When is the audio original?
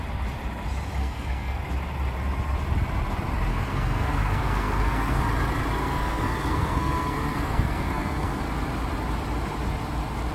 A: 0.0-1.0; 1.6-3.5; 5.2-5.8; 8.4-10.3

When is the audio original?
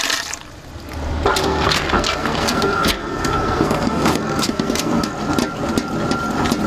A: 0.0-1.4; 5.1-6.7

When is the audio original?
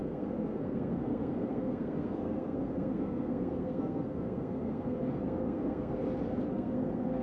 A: 6.0-6.5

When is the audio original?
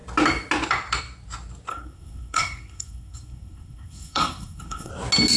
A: 0.0-1.7; 4.9-5.4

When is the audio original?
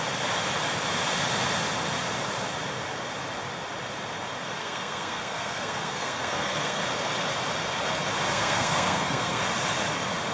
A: 0.0-4.6; 6.8-8.3; 9.4-10.3